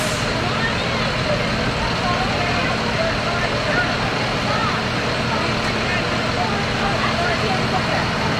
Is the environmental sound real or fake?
real